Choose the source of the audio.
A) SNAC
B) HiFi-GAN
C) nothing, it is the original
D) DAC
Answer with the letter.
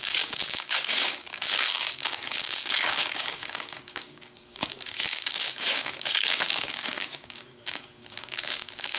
D